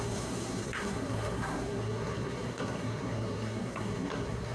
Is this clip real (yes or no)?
no